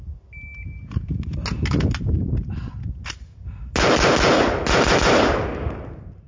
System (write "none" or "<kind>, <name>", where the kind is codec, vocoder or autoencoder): none